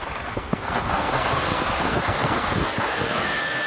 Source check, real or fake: fake